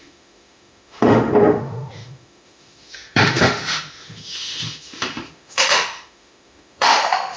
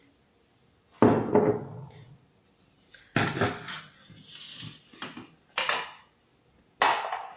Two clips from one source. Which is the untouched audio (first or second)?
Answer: second